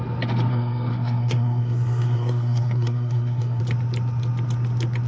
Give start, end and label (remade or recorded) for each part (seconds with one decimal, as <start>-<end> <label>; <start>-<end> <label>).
0.0-0.5 recorded; 0.5-3.6 remade; 3.6-5.1 recorded